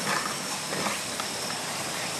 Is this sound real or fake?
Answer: real